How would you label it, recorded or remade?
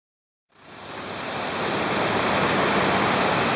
recorded